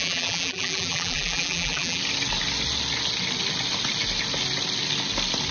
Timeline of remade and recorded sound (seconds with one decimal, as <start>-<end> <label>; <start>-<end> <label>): 0.0-2.0 remade; 2.0-5.5 recorded